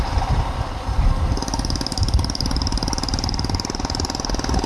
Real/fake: real